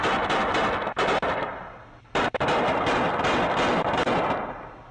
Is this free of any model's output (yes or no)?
yes